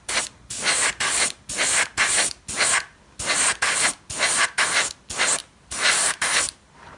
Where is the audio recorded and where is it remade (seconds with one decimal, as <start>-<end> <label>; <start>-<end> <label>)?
0.0-5.4 recorded; 5.4-7.0 remade